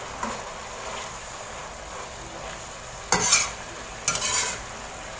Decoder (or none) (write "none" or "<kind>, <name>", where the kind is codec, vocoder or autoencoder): none